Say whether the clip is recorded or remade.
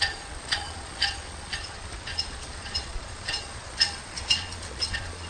remade